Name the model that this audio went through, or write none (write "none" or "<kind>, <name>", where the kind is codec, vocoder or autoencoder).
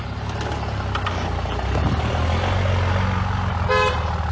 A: none